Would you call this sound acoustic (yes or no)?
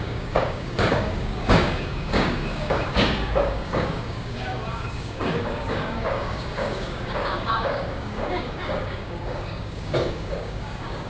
no